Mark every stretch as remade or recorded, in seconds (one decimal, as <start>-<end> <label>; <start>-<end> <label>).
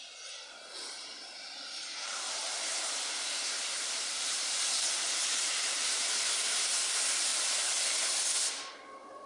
0.0-0.9 recorded; 0.9-6.0 remade; 6.0-7.3 recorded; 7.3-8.0 remade; 8.0-9.3 recorded